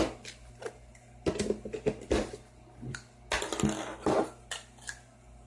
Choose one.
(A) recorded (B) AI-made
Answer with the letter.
A